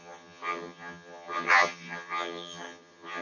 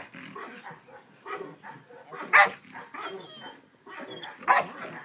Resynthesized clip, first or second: first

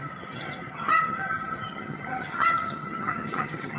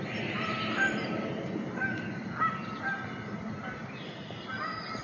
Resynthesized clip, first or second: first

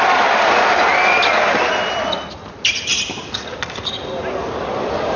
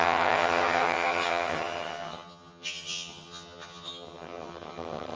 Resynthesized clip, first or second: second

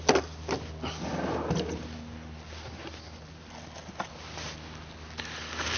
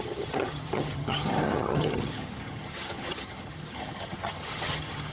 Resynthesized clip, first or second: second